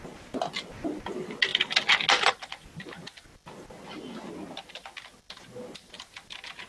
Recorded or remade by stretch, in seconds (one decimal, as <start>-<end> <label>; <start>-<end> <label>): 0.0-6.7 recorded